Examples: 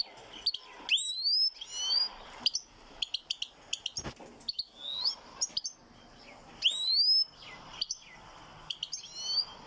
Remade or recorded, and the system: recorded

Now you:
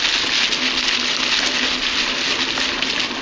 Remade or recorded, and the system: recorded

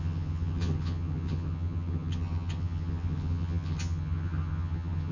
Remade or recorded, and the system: remade, vocoder, HiFi-GAN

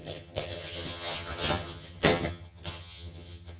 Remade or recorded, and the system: remade, vocoder, HiFi-GAN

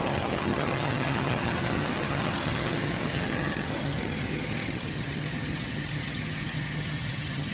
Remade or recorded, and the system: remade, vocoder, HiFi-GAN